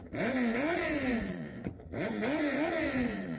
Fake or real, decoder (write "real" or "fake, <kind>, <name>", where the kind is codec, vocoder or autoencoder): fake, vocoder, Vocos